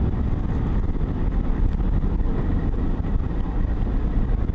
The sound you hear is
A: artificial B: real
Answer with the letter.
A